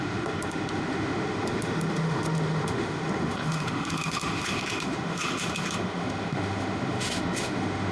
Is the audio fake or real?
fake